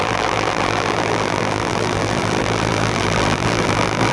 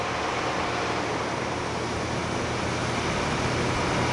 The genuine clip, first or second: second